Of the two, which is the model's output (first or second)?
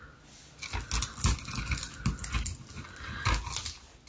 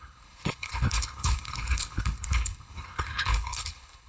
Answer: second